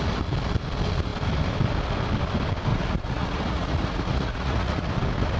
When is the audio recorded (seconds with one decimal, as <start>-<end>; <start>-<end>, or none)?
0.0-2.7; 4.9-5.4